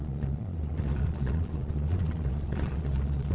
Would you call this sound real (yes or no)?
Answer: no